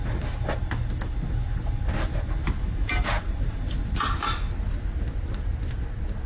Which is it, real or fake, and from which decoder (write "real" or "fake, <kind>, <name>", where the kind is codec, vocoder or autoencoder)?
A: real